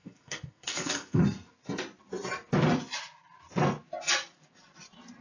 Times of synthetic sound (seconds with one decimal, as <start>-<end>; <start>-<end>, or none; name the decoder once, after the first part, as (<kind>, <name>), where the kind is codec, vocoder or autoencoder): 0.0-1.2 (codec, SNAC)

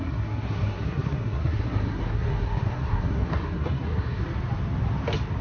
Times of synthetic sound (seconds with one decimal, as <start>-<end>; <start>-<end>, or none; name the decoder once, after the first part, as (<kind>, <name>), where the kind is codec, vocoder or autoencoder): 0.0-4.2 (codec, SNAC)

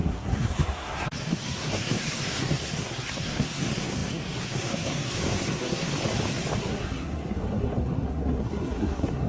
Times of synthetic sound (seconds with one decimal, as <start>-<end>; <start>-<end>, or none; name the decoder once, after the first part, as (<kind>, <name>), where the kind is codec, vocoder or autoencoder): 0.0-5.9 (codec, SNAC); 6.6-9.3

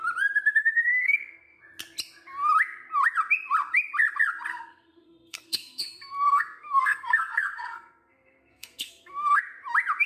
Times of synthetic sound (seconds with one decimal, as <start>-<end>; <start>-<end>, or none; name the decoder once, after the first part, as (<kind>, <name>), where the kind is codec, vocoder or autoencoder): 0.6-1.6 (codec, SNAC); 4.5-9.4

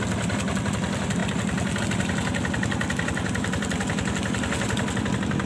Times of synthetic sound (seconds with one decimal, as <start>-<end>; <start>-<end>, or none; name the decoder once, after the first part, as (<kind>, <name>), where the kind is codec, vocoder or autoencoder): none

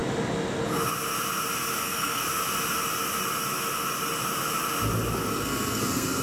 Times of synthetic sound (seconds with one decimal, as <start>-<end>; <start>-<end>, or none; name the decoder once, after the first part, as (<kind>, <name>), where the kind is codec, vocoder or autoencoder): 1.8-2.2 (codec, SNAC); 5.3-6.2

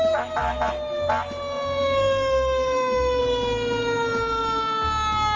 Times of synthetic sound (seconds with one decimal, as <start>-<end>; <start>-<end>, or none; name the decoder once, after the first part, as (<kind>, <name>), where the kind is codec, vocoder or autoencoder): 1.8-3.2 (codec, SNAC)